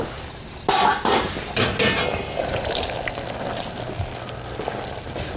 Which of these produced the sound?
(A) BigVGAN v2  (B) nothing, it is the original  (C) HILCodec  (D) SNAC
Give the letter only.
B